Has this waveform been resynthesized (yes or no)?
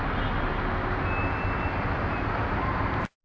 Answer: no